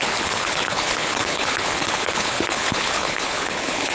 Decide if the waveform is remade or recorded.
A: remade